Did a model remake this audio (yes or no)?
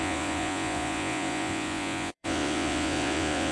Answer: yes